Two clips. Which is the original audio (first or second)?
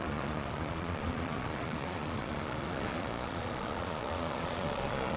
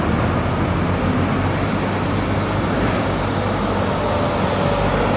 second